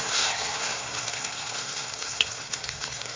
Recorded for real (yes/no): no